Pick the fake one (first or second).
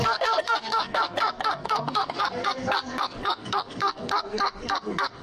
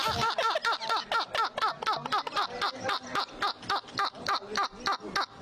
first